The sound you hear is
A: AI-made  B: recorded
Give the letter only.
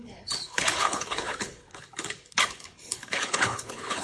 A